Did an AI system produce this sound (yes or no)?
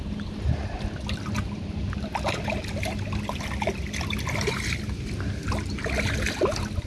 no